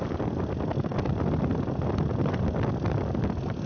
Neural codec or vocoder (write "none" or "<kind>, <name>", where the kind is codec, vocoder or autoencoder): none